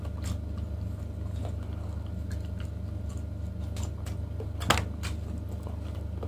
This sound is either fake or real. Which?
real